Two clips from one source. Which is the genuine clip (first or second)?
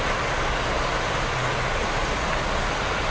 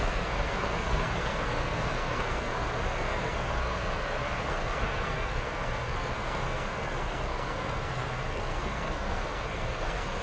first